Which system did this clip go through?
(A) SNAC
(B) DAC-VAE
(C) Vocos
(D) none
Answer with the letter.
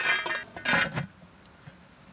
D